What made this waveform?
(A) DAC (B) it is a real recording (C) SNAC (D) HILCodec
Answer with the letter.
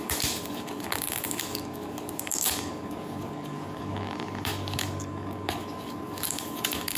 A